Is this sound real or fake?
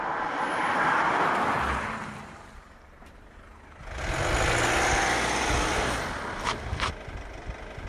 real